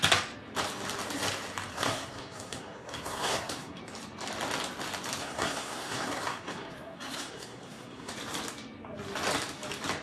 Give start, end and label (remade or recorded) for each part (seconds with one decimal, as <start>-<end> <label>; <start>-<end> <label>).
0.0-1.7 recorded; 1.7-3.8 remade; 3.8-5.2 recorded; 5.2-8.1 remade; 8.1-10.0 recorded